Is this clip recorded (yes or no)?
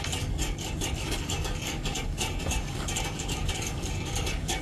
no